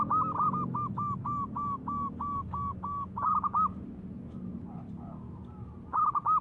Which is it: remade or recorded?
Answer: recorded